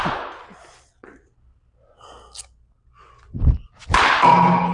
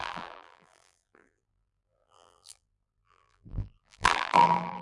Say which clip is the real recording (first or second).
first